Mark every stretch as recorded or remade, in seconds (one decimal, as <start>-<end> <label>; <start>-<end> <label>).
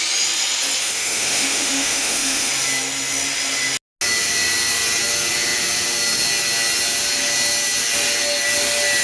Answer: 0.0-0.8 recorded; 0.8-2.5 remade; 2.5-9.0 recorded